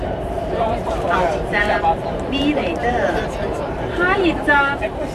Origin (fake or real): fake